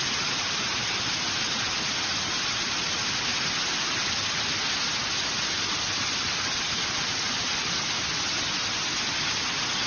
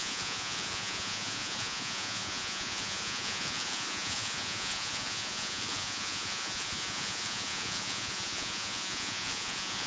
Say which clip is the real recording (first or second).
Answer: first